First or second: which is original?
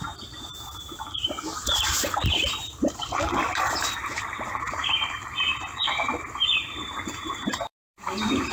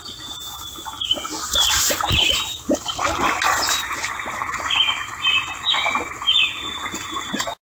second